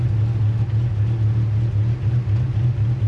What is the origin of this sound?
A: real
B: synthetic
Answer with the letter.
A